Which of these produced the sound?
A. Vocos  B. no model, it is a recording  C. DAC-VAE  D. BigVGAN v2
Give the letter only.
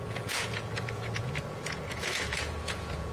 A